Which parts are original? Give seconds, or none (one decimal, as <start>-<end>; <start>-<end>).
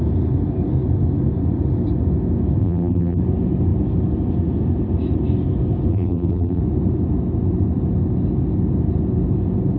0.0-2.6; 3.2-5.9; 6.6-9.8